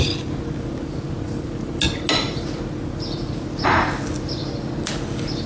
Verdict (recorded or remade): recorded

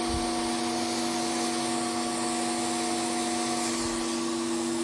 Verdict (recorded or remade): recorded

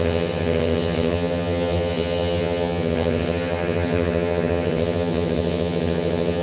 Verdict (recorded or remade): remade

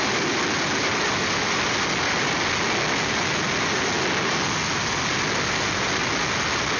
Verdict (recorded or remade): recorded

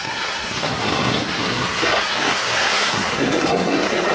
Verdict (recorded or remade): remade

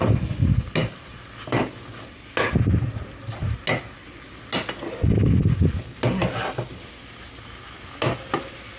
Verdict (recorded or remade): recorded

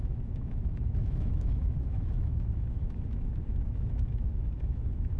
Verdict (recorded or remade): remade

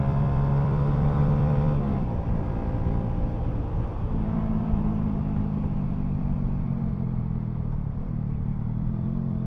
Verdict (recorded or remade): remade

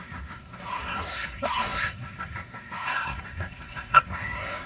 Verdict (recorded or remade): remade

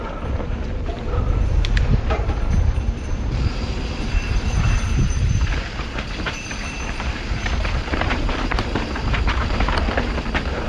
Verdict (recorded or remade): remade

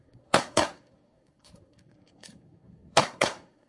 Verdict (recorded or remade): remade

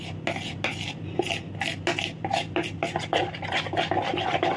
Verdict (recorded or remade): recorded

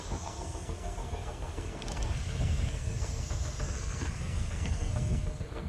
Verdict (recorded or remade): remade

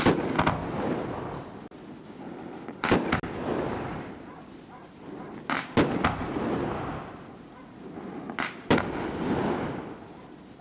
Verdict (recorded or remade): recorded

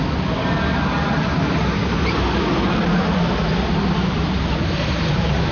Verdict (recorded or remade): recorded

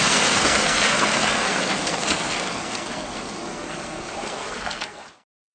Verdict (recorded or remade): remade